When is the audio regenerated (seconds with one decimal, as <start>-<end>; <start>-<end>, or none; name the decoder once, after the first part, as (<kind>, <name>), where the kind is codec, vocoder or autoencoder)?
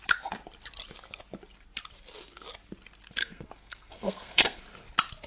3.2-4.6 (codec, SNAC)